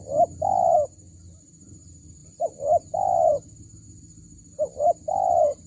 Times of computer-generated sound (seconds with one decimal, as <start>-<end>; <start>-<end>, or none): none